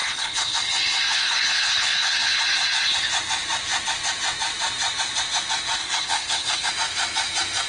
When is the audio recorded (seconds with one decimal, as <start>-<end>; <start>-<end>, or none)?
0.6-1.1; 2.4-5.8; 6.7-7.7